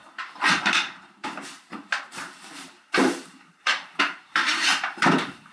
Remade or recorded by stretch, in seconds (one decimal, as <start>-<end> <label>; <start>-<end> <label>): 0.0-0.6 recorded; 0.6-1.2 remade; 1.2-2.0 recorded; 2.0-5.5 remade